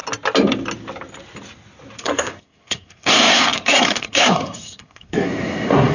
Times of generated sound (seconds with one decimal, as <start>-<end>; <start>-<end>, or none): 2.0-5.9